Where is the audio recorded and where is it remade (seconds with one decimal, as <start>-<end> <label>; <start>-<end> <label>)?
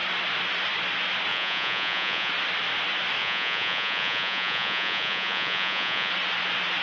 0.0-1.3 recorded; 1.3-2.3 remade; 2.3-3.2 recorded; 3.2-6.1 remade; 6.1-6.8 recorded